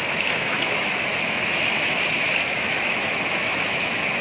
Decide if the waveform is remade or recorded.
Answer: remade